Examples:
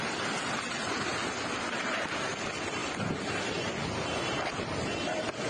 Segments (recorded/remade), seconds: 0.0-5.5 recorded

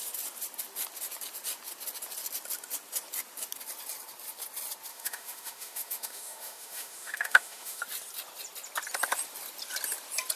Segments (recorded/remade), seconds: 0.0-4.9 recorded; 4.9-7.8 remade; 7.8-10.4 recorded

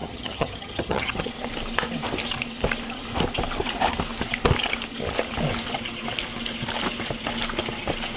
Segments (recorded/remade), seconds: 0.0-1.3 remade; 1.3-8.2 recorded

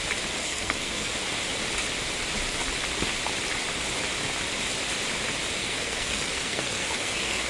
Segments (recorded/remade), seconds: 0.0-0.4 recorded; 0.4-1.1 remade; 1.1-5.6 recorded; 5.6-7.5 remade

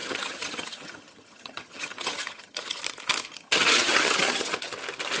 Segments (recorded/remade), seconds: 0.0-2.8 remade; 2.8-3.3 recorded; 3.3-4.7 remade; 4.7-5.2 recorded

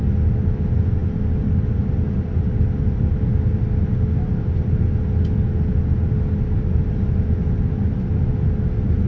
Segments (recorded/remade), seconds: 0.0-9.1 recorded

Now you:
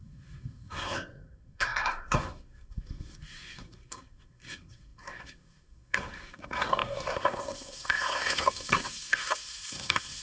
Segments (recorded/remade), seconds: 0.0-10.2 remade

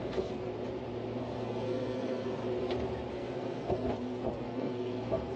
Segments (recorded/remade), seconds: 0.0-0.5 remade; 0.5-1.2 recorded; 1.2-2.4 remade; 2.4-3.1 recorded; 3.1-5.4 remade